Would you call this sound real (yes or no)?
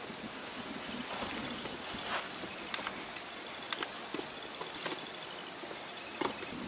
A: yes